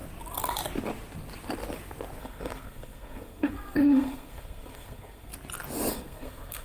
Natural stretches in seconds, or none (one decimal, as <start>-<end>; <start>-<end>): 0.0-2.2; 5.3-5.9